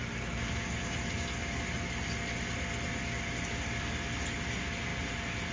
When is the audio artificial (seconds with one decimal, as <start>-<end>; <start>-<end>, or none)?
4.9-5.5